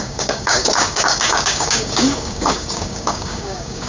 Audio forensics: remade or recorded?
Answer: remade